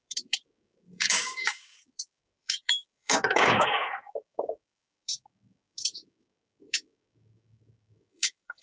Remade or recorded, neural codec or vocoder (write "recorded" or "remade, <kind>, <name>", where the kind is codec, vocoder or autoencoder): remade, codec, DAC